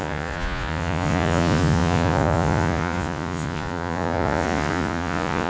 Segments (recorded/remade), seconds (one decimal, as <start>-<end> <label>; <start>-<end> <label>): 0.0-5.5 remade